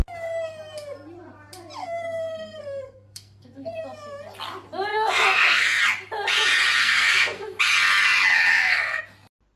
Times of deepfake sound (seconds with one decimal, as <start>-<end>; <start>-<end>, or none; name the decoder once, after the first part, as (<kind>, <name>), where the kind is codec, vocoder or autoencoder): 1.8-3.8 (codec, SNAC); 4.9-5.8; 6.8-7.6; 8.5-9.0